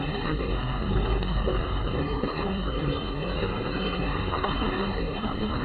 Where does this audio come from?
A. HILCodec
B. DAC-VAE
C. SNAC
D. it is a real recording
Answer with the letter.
C